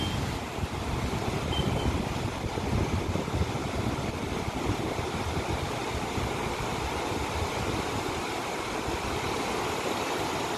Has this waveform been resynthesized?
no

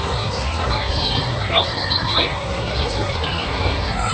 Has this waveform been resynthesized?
yes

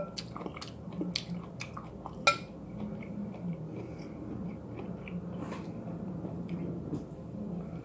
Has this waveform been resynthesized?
no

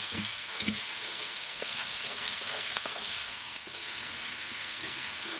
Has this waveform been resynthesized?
yes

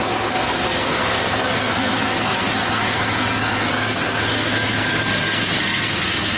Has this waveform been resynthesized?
yes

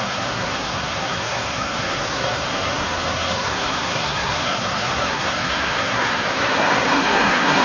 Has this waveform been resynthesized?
yes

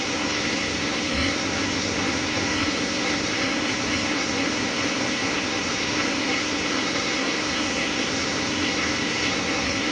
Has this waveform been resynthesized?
yes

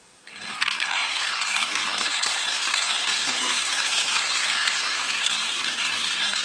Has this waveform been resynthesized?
yes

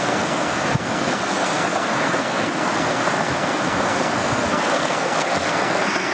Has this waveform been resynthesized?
yes